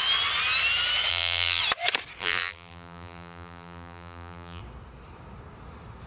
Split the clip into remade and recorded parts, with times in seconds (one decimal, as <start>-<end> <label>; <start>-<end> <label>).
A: 0.0-1.1 recorded; 1.1-1.6 remade; 1.6-2.2 recorded; 2.2-4.6 remade; 4.6-6.1 recorded